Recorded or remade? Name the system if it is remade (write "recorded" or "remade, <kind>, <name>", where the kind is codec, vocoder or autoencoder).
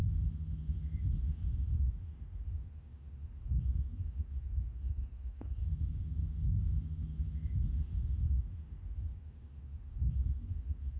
remade, autoencoder, DAC-VAE